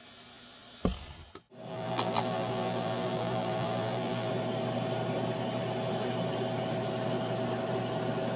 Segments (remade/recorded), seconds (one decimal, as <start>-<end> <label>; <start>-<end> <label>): 0.0-1.7 recorded; 1.7-4.3 remade; 4.3-8.4 recorded